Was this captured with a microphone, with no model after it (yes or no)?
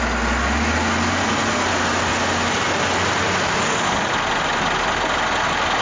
yes